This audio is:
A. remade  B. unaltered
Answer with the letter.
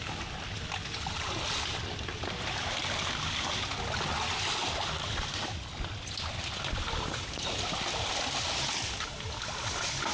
B